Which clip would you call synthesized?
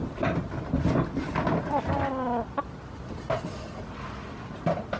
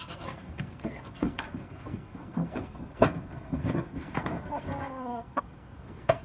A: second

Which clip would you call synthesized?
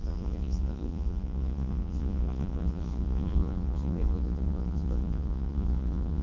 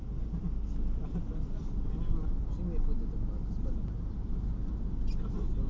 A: first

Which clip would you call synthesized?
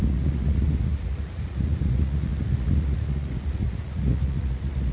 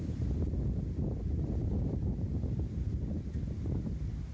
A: first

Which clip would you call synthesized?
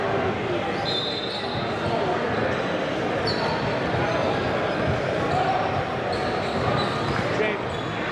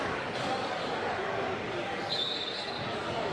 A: second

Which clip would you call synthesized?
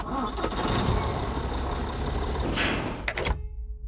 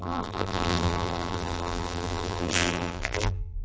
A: second